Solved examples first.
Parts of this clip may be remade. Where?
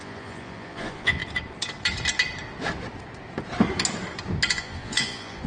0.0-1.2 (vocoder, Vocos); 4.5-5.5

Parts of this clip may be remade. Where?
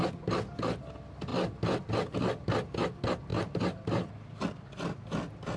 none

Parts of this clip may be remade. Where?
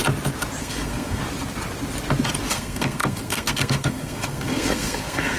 0.6-1.2 (codec, SNAC); 2.5-5.4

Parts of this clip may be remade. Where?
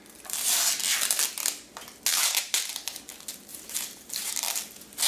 2.1-2.7 (vocoder, BigVGAN v2); 3.5-4.3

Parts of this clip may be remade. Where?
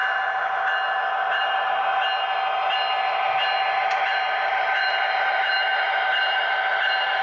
1.3-1.9 (vocoder, BigVGAN v2); 4.0-7.2